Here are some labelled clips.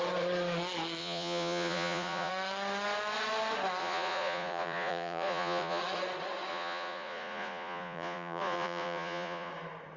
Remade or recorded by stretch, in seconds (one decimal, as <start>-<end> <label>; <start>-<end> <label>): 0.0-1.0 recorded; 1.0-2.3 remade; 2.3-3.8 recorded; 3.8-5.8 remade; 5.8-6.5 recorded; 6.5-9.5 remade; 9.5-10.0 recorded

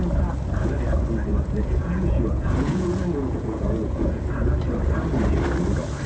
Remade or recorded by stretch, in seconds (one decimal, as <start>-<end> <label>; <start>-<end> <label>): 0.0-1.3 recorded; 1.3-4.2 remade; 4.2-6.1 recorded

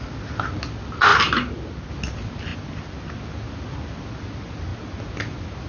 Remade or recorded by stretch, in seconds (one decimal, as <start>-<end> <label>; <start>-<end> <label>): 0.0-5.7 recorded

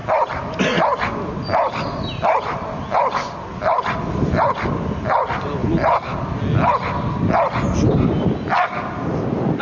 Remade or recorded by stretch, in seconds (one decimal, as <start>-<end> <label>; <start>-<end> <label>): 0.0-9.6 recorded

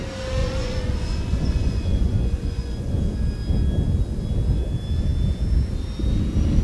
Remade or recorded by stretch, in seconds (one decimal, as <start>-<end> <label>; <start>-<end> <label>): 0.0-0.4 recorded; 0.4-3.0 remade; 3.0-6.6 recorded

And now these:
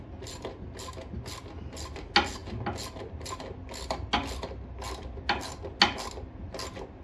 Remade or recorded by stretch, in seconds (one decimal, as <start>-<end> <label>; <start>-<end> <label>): 0.0-7.0 recorded

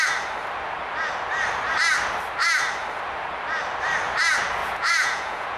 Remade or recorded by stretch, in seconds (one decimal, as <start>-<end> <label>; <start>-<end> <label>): 0.0-4.6 recorded; 4.6-5.6 remade